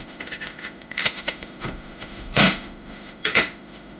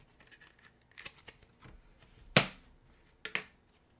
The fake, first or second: first